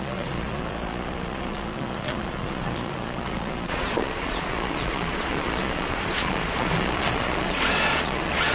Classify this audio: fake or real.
fake